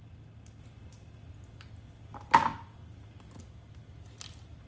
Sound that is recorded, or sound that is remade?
recorded